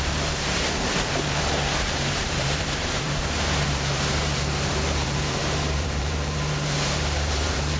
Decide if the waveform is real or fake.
fake